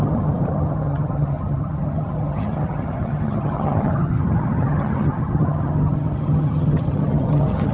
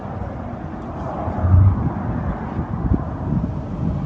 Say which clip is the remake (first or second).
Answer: first